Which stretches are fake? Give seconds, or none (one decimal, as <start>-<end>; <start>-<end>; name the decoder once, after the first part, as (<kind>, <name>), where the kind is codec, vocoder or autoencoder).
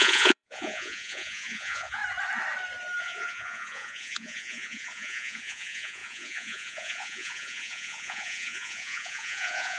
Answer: 0.0-2.0 (vocoder, Vocos); 3.0-9.8